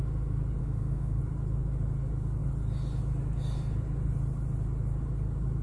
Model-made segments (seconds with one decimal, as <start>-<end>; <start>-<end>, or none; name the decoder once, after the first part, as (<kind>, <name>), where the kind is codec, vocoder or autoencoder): 0.6-1.2 (autoencoder, DAC-VAE)